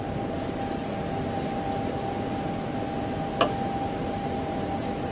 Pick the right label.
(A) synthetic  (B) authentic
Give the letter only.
B